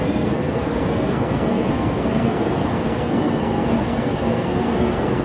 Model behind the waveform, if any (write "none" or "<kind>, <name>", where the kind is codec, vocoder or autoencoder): codec, SNAC